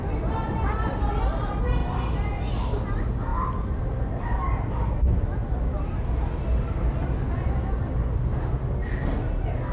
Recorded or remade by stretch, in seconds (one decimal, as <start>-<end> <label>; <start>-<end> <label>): 0.0-1.8 recorded; 1.8-2.5 remade; 2.5-9.7 recorded